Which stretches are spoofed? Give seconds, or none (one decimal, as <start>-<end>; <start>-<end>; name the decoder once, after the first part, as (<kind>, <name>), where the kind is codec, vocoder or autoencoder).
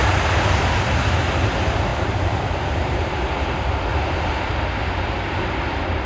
1.9-3.1 (vocoder, BigVGAN v2); 3.9-4.5